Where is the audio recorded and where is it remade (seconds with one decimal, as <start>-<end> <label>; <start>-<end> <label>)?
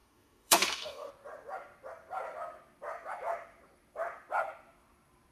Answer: 0.0-1.1 remade; 1.1-5.3 recorded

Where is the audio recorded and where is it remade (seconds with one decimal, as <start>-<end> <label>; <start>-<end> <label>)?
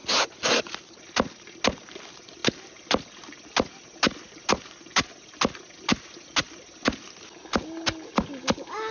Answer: 0.0-8.9 recorded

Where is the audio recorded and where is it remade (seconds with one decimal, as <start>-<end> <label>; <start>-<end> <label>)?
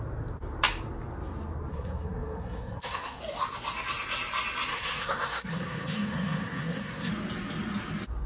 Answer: 0.0-1.7 recorded; 1.7-3.2 remade; 3.2-4.7 recorded; 4.7-7.1 remade; 7.1-8.3 recorded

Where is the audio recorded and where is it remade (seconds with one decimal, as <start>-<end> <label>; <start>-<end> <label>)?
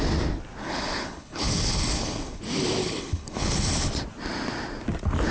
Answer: 0.0-0.6 recorded; 0.6-2.4 remade; 2.4-2.8 recorded; 2.8-3.9 remade; 3.9-5.3 recorded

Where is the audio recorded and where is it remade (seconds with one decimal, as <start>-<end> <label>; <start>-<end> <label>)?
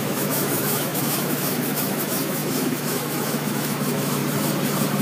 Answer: 0.0-4.2 remade; 4.2-5.0 recorded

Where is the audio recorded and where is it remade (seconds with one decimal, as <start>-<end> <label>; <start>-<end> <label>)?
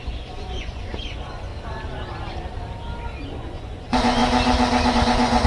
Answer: 0.0-1.5 remade; 1.5-3.3 recorded; 3.3-4.2 remade; 4.2-4.9 recorded; 4.9-5.5 remade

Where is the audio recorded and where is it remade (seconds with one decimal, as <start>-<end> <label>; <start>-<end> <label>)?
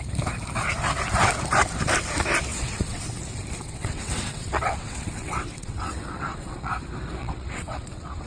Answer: 0.0-2.5 recorded; 2.5-3.2 remade; 3.2-3.6 recorded; 3.6-6.7 remade; 6.7-7.2 recorded; 7.2-8.3 remade